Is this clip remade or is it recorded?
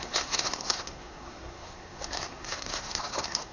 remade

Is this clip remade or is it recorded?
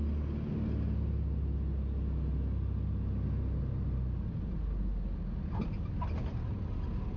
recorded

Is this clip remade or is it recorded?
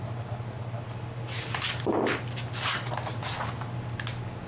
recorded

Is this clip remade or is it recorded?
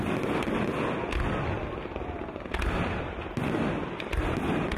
recorded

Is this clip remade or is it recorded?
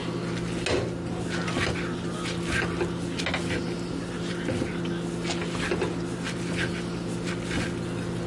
recorded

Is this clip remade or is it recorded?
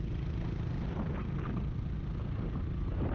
recorded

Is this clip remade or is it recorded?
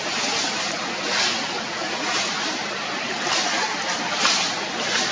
recorded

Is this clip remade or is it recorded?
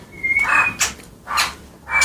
recorded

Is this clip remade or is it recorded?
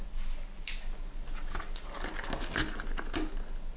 recorded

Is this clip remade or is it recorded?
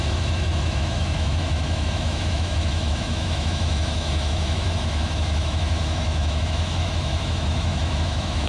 remade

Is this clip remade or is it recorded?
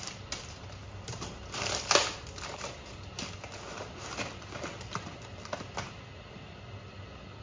recorded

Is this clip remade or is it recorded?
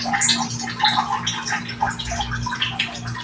recorded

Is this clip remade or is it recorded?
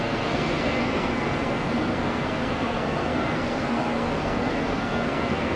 remade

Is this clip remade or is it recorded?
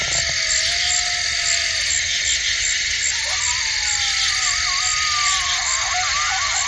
recorded